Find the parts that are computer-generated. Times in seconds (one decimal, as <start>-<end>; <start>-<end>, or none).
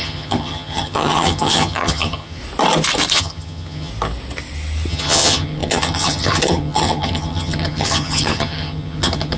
0.0-2.4; 3.1-3.9; 4.9-9.4